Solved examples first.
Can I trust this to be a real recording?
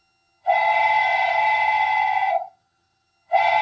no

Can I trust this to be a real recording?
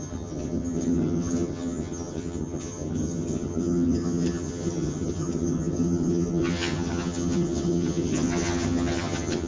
no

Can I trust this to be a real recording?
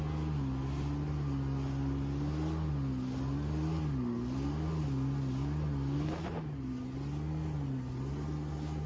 yes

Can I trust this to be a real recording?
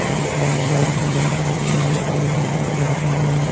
no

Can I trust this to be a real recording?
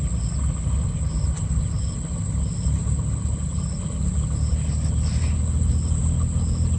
yes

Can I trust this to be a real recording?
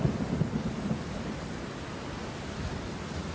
yes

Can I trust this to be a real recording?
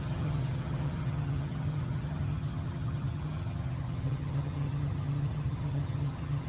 no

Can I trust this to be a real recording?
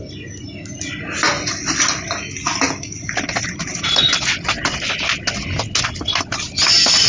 yes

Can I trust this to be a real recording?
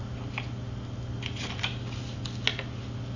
yes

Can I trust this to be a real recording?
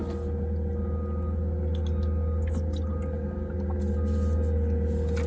yes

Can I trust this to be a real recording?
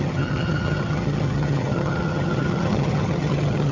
no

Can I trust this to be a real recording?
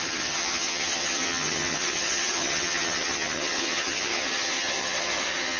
no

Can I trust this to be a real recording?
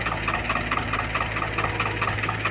yes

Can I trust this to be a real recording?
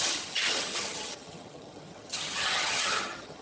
no